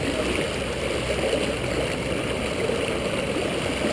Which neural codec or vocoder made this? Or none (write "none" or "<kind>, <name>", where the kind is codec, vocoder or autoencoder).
none